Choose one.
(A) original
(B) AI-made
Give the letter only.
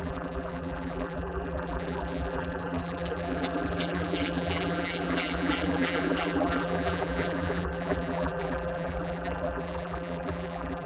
B